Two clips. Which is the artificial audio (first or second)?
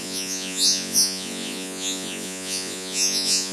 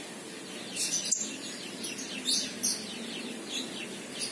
first